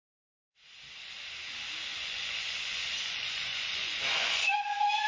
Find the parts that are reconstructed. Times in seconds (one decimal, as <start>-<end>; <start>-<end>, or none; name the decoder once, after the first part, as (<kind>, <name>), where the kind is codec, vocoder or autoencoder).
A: 1.9-5.1 (vocoder, Vocos)

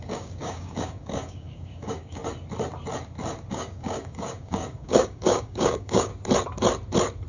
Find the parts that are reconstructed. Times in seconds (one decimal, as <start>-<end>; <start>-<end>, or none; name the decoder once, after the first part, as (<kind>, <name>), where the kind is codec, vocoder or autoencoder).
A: 0.0-2.2 (codec, DAC); 3.5-6.1

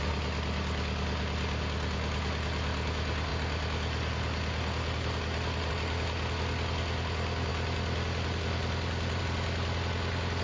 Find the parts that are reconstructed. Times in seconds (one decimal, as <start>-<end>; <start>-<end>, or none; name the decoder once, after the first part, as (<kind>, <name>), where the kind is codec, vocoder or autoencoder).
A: none